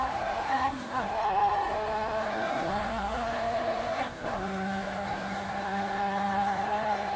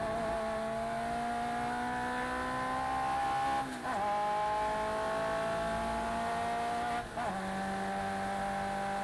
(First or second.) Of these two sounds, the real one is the second